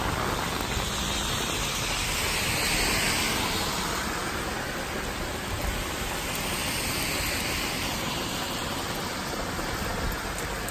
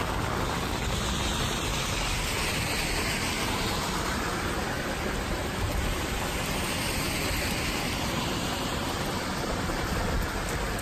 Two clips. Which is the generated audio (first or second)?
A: second